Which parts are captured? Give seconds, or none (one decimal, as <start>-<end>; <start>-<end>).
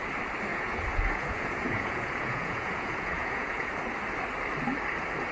0.0-0.5; 3.7-5.3